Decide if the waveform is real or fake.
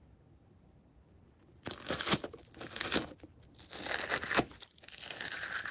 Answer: fake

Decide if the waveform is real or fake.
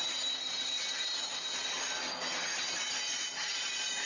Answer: real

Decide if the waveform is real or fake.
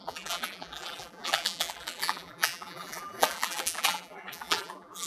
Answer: fake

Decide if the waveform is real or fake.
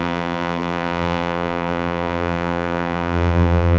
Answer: fake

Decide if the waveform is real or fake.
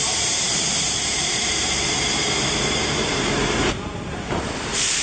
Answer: fake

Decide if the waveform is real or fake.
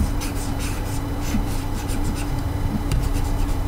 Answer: fake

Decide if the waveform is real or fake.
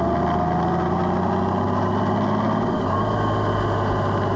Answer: real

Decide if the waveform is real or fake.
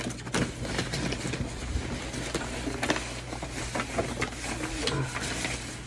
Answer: real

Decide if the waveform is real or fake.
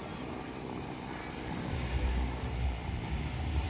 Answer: real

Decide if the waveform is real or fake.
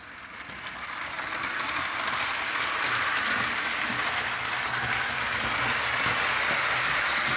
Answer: real